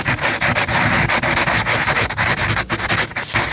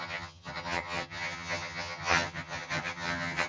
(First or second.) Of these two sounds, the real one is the first